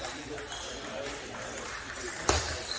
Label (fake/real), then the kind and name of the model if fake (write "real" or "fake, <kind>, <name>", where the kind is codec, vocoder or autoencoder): fake, vocoder, BigVGAN v2